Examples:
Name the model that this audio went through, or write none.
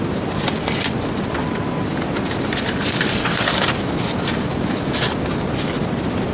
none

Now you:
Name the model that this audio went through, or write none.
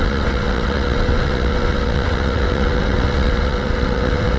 vocoder, WaveNeXt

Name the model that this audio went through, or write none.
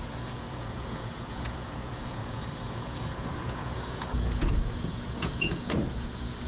vocoder, Vocos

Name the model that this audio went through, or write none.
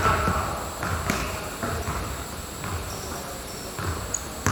none